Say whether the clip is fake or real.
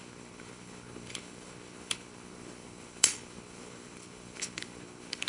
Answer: fake